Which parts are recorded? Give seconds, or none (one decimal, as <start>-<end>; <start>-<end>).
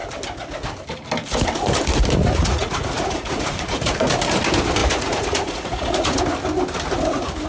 0.0-2.4; 4.1-4.8; 6.2-7.5